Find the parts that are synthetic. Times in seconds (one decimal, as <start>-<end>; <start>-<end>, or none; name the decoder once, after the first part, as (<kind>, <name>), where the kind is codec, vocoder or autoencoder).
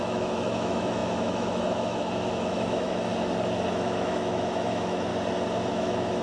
0.0-3.1 (autoencoder, DAC-VAE); 3.7-5.1; 5.7-6.2